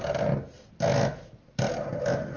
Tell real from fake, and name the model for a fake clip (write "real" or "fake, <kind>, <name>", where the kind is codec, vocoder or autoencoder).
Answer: real